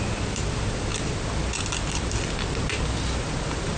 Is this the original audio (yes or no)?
yes